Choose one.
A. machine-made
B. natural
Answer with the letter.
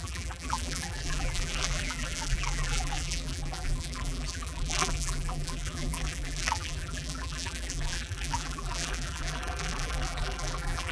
A